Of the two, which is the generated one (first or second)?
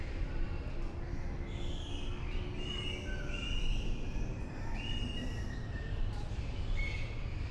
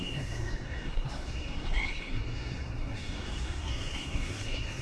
second